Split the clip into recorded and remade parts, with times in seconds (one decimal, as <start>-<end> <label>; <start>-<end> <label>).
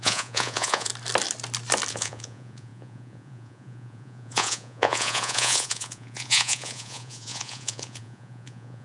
0.0-0.9 remade; 0.9-1.9 recorded; 1.9-8.8 remade